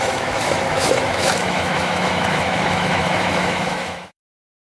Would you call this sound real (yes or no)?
no